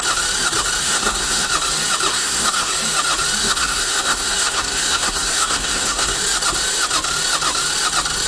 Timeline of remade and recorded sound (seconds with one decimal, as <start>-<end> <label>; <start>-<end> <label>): 0.0-0.8 recorded; 0.8-1.5 remade; 1.5-2.1 recorded; 2.1-2.7 remade; 2.7-3.4 recorded; 3.4-6.2 remade; 6.2-8.3 recorded